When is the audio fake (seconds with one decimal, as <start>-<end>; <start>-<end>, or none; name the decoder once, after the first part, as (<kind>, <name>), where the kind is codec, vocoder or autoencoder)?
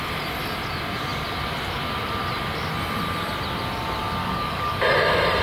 4.2-4.8 (codec, DAC)